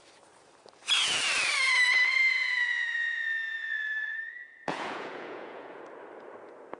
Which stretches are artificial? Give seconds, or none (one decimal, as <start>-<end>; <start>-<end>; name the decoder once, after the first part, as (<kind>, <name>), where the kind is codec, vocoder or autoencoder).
2.4-5.8 (vocoder, Vocos)